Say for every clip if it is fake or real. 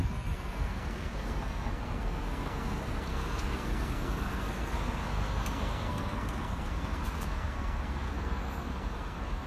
fake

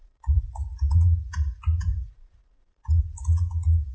fake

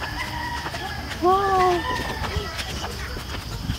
real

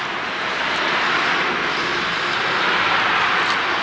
real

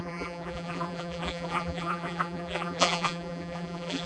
fake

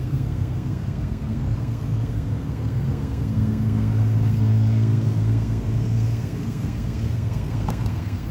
fake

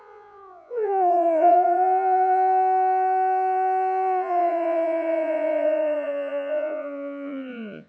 fake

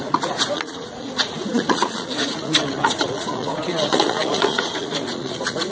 fake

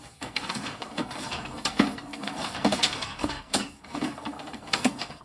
fake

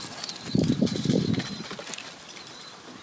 real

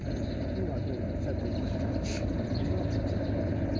fake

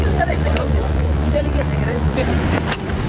fake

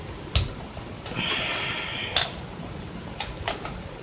real